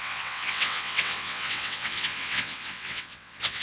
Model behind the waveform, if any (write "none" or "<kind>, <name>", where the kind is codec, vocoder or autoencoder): vocoder, WaveNeXt